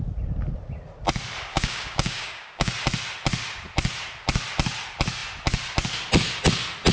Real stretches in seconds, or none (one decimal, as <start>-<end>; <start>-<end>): 0.0-1.5; 2.7-6.9